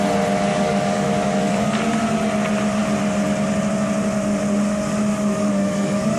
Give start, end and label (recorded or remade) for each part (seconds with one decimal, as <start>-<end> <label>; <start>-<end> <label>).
0.0-0.5 recorded; 0.5-1.8 remade; 1.8-5.1 recorded; 5.1-6.2 remade